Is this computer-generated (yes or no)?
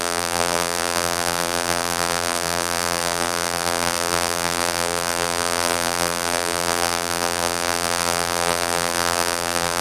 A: yes